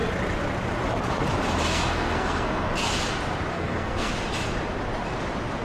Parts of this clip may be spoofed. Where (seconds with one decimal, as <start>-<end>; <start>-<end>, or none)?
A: 1.7-2.7; 3.5-4.1